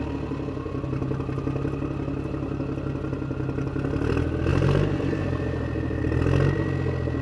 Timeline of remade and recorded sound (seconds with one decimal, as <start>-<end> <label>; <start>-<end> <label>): 0.0-4.5 recorded; 4.5-6.0 remade; 6.0-7.2 recorded

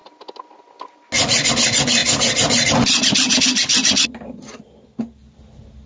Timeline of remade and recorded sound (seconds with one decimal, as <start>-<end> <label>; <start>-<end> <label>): 0.0-5.9 recorded

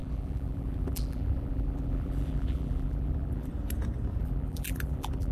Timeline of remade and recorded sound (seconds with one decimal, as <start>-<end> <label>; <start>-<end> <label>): 0.0-3.5 remade; 3.5-4.2 recorded; 4.2-5.3 remade